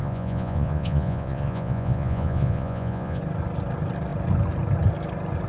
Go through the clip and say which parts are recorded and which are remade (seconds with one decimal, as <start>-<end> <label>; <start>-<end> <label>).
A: 0.0-3.2 remade; 3.2-5.5 recorded